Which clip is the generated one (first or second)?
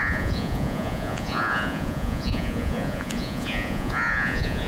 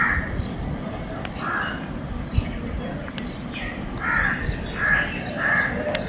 first